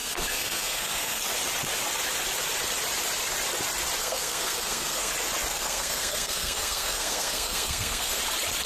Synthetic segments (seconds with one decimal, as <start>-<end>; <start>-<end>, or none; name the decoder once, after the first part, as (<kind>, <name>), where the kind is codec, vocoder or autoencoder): 0.0-1.2 (codec, SNAC); 4.0-5.1; 5.5-8.2

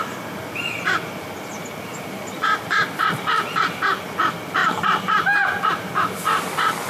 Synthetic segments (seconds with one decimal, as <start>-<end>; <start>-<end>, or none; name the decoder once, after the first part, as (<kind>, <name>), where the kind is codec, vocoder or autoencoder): none

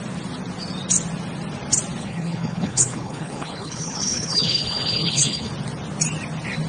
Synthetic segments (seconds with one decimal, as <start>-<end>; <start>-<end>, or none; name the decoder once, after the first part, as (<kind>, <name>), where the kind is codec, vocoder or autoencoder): 2.0-5.5 (codec, HILCodec)

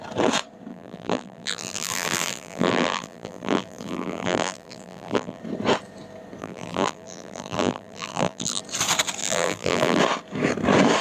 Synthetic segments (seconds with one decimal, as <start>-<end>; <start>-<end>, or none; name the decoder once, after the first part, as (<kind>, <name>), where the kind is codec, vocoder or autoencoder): 0.7-5.4 (vocoder, BigVGAN v2); 6.4-8.6; 9.2-10.0

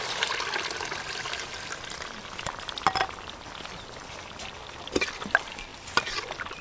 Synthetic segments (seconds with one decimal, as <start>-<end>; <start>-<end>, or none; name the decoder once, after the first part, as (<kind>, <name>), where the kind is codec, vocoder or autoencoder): none

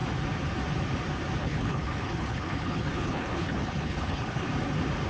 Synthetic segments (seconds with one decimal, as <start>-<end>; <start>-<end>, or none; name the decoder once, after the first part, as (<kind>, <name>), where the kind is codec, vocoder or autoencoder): 1.4-4.5 (codec, HILCodec)

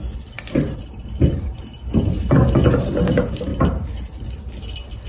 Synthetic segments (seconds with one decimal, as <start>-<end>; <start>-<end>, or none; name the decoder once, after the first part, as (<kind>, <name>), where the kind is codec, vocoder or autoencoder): 3.1-3.5 (vocoder, BigVGAN v2)

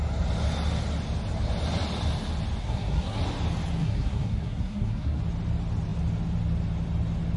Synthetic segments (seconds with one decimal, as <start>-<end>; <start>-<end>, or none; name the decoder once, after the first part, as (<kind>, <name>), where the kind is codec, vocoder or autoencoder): 2.6-3.2 (codec, SNAC); 3.8-5.2